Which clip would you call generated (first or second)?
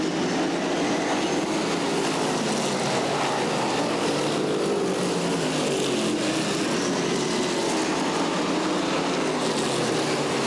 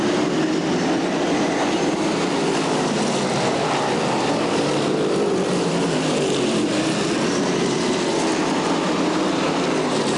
second